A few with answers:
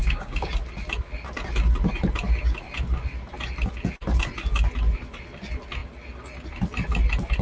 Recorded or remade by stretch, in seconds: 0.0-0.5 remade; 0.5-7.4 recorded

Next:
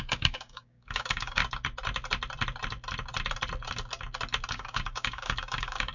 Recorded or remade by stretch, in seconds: 0.0-1.4 remade; 1.4-4.5 recorded; 4.5-5.9 remade

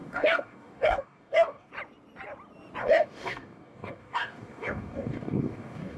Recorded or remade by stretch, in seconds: 0.0-1.7 remade; 1.7-2.8 recorded; 2.8-6.0 remade

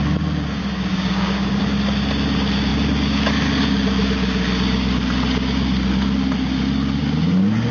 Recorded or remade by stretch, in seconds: 0.0-0.6 recorded; 0.6-1.6 remade; 1.6-7.7 recorded